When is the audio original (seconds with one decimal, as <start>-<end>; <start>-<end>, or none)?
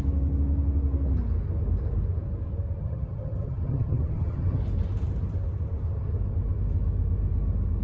0.0-2.8; 4.6-7.8